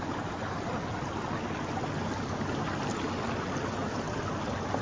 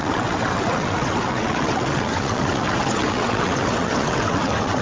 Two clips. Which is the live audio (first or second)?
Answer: first